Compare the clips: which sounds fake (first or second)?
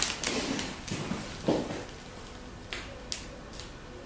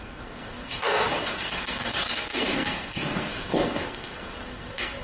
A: second